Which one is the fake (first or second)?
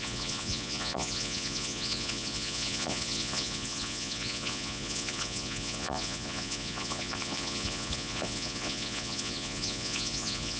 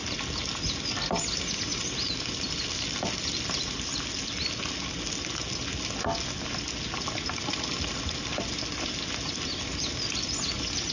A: first